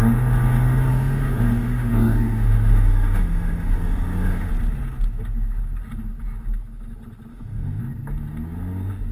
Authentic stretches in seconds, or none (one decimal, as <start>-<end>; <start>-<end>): 0.0-0.9; 4.5-7.3; 7.8-9.1